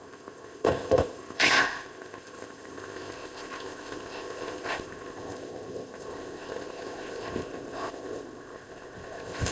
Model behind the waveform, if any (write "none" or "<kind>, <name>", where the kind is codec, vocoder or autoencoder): codec, ZipCodec